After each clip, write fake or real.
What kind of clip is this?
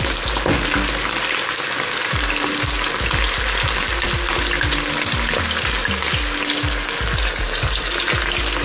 real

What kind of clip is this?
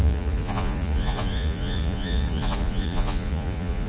fake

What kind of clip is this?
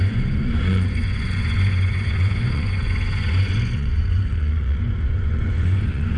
fake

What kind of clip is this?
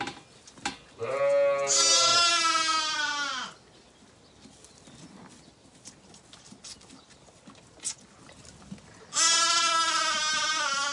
real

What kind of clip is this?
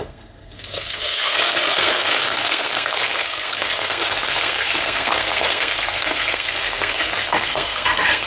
fake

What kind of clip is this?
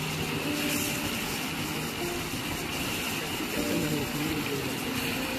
real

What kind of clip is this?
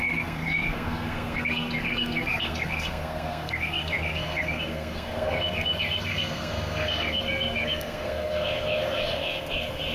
fake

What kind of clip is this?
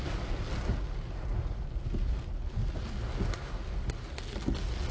real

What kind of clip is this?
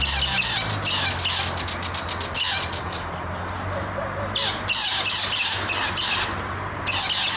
real